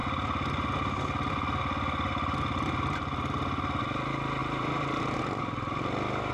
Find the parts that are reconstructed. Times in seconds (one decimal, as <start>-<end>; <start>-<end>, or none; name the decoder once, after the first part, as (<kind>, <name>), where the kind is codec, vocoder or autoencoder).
4.4-5.4 (vocoder, BigVGAN v2)